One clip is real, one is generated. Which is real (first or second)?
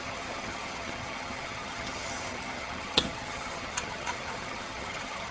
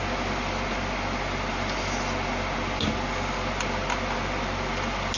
second